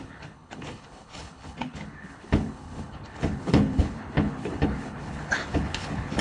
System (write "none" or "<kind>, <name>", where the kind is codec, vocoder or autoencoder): codec, HILCodec